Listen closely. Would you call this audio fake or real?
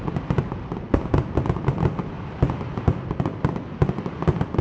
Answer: real